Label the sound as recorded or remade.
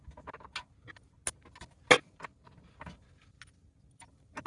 recorded